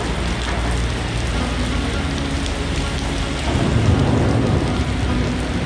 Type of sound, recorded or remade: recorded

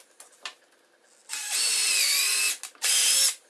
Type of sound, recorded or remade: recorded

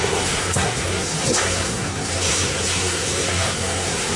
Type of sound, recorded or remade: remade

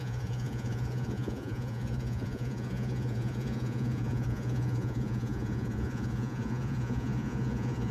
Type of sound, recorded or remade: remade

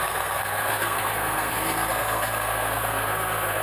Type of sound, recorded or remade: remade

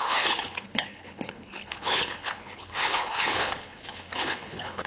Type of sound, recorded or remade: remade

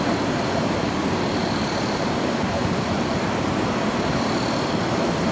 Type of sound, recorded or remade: remade